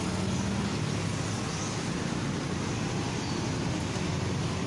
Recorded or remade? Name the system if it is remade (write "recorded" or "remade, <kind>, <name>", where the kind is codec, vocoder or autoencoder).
recorded